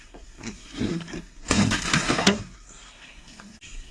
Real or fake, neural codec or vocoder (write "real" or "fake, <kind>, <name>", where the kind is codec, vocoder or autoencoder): fake, codec, SNAC